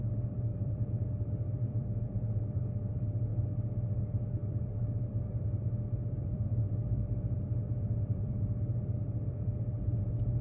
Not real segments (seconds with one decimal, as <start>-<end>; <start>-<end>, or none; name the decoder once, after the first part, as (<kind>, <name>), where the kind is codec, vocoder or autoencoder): 0.0-3.3 (vocoder, BigVGAN v2); 4.0-10.4